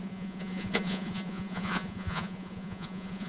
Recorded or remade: remade